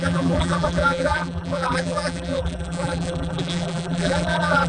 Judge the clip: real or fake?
fake